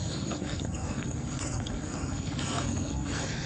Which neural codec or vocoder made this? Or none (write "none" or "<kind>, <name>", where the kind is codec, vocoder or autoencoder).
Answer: codec, SNAC